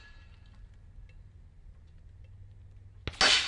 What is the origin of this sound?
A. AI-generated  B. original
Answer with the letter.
B